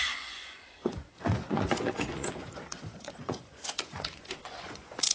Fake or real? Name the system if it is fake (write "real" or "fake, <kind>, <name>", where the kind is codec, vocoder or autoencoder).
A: fake, vocoder, Vocos